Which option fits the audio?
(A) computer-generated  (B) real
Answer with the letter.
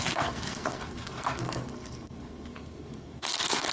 A